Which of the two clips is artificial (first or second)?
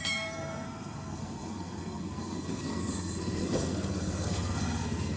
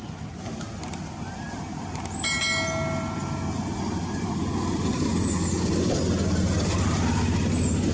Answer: first